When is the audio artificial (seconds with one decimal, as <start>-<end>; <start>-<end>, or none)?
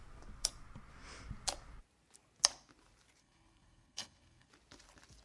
3.2-4.5